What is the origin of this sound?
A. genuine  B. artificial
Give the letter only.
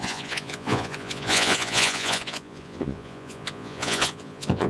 B